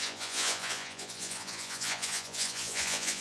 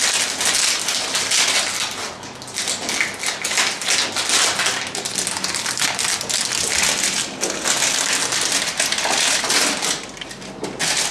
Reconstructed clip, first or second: first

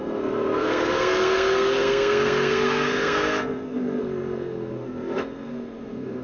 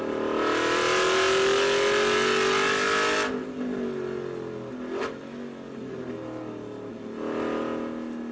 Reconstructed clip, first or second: first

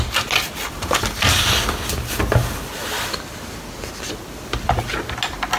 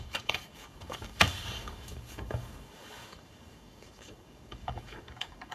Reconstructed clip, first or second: second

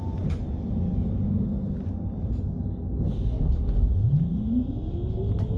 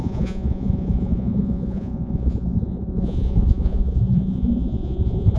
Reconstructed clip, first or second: second